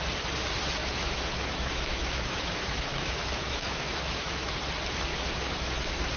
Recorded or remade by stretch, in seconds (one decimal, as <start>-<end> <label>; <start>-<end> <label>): 0.0-0.8 recorded; 0.8-4.5 remade; 4.5-5.1 recorded; 5.1-5.7 remade; 5.7-6.2 recorded